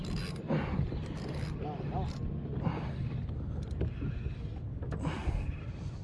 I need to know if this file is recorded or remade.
recorded